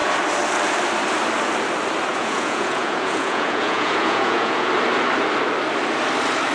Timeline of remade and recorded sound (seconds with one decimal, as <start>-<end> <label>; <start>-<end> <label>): 0.0-2.1 recorded; 2.1-4.7 remade; 4.7-6.5 recorded